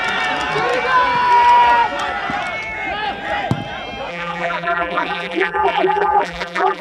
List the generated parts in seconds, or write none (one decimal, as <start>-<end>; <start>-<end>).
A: 4.1-6.8